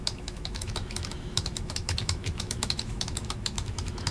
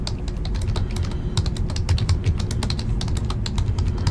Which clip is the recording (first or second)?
second